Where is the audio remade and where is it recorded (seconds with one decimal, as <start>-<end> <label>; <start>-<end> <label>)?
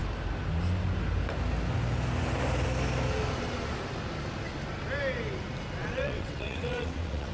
0.0-5.8 recorded; 5.8-7.3 remade